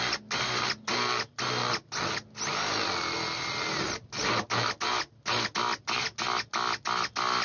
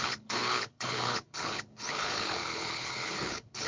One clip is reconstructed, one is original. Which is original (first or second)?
first